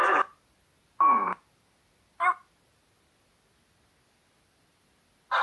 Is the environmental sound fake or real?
real